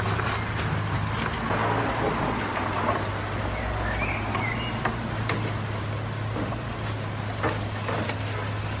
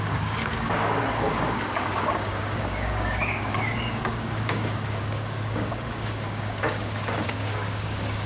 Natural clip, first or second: first